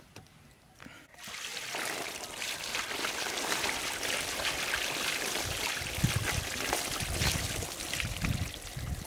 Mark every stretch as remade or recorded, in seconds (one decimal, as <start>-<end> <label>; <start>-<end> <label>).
0.0-9.1 recorded